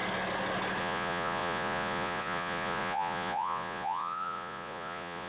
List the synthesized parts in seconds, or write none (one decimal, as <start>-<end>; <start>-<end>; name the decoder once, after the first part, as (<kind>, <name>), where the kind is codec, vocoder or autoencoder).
0.8-5.3 (vocoder, Vocos)